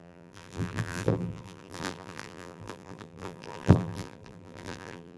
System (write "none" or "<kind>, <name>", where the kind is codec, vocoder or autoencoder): vocoder, BigVGAN v2